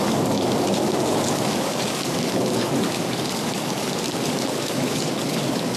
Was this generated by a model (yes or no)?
yes